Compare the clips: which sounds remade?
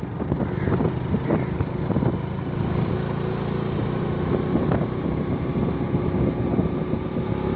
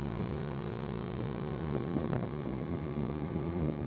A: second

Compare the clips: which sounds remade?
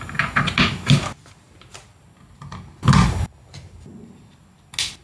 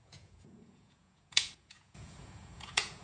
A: second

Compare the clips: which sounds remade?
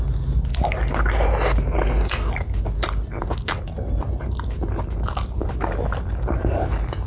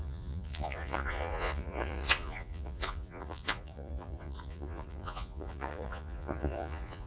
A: second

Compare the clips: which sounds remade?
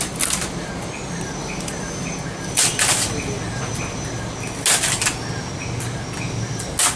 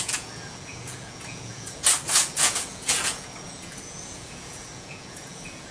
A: second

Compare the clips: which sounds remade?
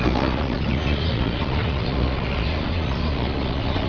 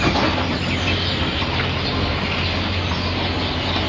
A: first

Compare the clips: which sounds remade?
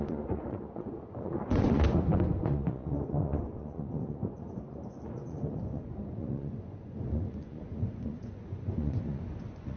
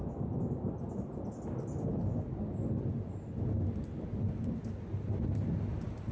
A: first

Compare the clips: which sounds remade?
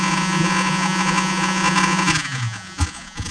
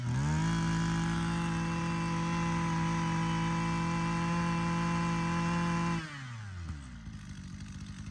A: first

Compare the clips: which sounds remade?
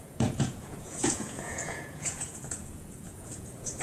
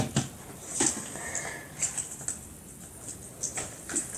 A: first